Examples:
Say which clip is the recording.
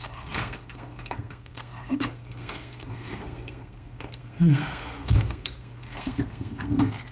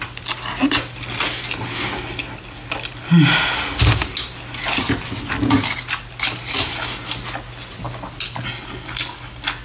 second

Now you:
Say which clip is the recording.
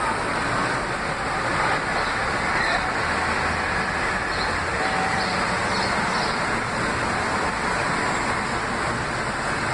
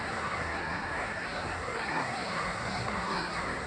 first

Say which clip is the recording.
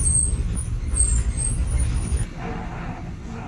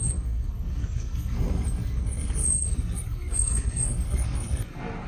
first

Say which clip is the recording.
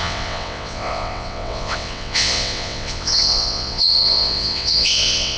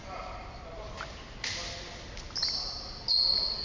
second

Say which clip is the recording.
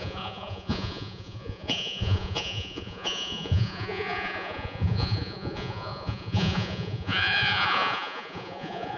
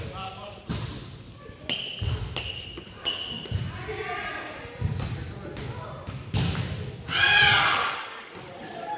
second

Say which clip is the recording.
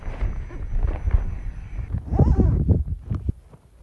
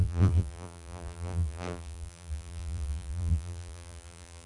first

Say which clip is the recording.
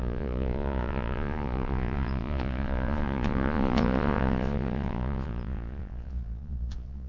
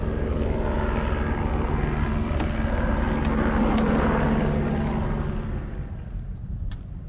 second